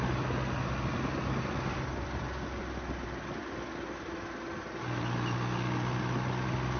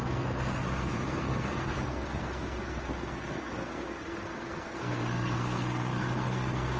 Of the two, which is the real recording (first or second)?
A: first